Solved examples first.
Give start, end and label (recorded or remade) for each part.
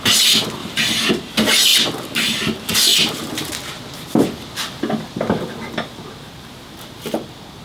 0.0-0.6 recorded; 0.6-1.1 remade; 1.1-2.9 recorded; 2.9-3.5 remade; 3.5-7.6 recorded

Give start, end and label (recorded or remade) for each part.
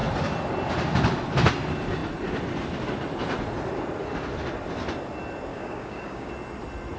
0.0-5.5 recorded; 5.5-6.3 remade; 6.3-7.0 recorded